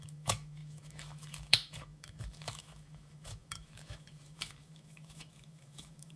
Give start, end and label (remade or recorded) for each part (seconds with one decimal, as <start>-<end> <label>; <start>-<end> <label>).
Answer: 0.0-6.2 remade